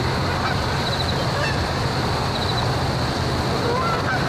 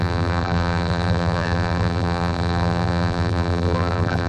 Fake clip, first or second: second